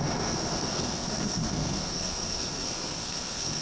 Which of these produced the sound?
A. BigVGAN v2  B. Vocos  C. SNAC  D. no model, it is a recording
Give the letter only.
C